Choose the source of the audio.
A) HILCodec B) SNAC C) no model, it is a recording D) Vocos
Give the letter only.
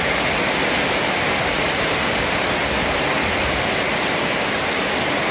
C